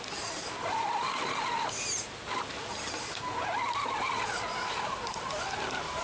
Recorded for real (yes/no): yes